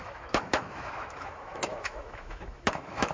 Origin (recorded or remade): remade